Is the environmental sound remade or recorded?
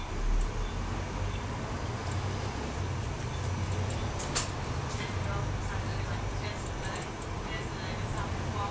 recorded